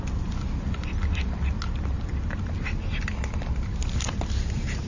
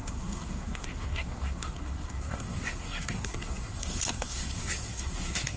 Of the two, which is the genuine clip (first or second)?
first